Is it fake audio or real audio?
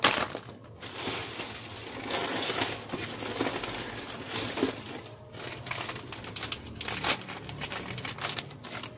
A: real